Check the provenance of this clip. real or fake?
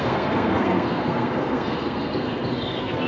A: fake